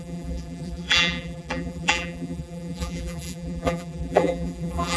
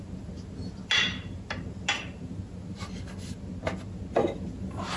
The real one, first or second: second